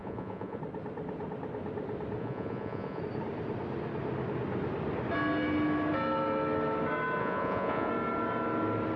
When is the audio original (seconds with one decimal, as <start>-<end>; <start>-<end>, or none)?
0.6-2.2; 3.0-7.2; 7.9-9.0